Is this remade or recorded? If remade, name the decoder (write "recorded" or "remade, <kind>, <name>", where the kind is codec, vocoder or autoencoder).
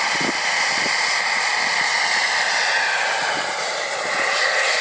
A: recorded